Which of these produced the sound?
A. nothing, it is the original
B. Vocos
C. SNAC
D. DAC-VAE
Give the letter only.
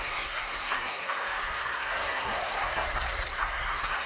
C